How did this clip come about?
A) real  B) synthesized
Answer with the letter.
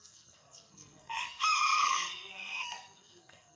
B